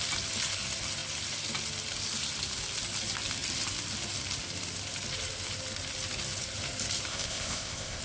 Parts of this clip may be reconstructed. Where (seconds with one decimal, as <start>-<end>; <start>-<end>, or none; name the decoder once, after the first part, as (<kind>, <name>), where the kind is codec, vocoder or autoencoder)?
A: 7.1-8.0 (codec, ZipCodec)